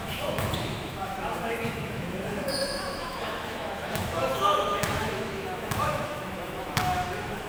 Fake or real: fake